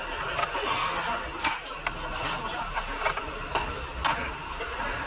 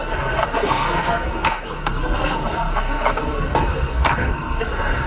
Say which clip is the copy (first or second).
second